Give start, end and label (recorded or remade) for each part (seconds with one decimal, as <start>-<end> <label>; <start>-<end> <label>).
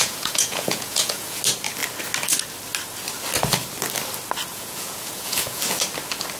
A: 0.0-1.4 remade; 1.4-4.5 recorded; 4.5-5.6 remade; 5.6-6.4 recorded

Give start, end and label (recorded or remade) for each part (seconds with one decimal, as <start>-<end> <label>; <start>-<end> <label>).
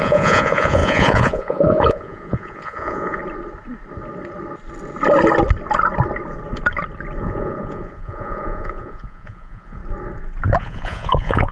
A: 0.0-3.2 remade; 3.2-7.2 recorded; 7.2-9.8 remade; 9.8-10.6 recorded; 10.6-11.5 remade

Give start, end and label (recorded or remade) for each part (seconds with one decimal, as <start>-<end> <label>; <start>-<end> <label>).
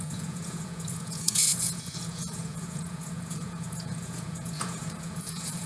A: 0.0-5.7 remade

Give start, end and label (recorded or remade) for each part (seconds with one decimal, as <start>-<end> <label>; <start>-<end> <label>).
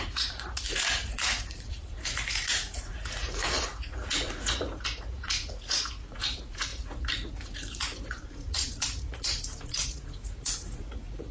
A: 0.0-11.3 remade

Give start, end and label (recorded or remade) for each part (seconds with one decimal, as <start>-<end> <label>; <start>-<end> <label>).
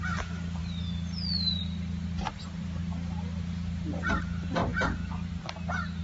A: 0.0-6.0 recorded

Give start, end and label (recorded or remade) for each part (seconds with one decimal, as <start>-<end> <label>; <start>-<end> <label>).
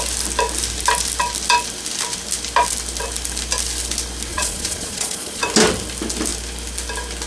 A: 0.0-4.3 recorded; 4.3-5.4 remade; 5.4-7.3 recorded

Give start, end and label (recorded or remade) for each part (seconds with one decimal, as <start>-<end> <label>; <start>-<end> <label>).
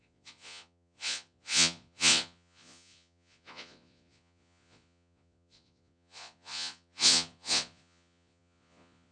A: 0.0-9.1 remade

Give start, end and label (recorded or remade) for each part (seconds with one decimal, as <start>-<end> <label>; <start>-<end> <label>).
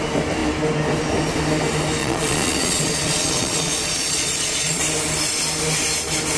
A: 0.0-2.0 recorded; 2.0-4.8 remade; 4.8-6.4 recorded